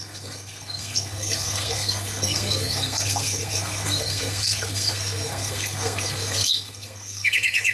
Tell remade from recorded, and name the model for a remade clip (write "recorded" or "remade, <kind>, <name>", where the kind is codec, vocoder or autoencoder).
remade, codec, SNAC